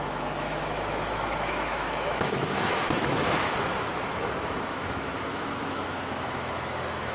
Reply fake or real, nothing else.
fake